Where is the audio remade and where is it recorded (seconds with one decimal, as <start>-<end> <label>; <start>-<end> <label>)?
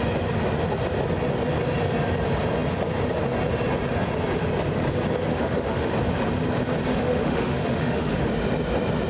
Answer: 0.0-5.3 recorded; 5.3-5.9 remade; 5.9-6.9 recorded; 6.9-8.3 remade; 8.3-9.1 recorded